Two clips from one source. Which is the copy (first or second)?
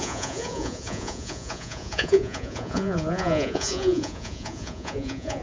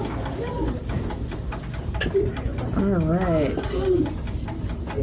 first